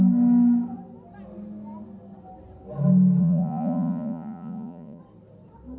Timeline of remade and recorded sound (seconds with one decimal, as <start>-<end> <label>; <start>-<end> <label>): 0.0-3.2 recorded; 3.2-5.0 remade; 5.0-5.8 recorded